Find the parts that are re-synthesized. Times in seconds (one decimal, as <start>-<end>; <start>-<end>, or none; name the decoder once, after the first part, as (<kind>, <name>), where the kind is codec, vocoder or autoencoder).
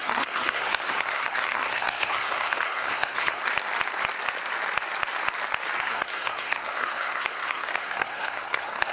0.0-3.4 (codec, SNAC); 5.8-8.9